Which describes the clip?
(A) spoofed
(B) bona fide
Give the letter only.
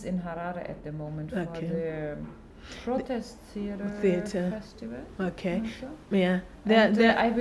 B